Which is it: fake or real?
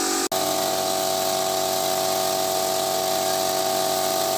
real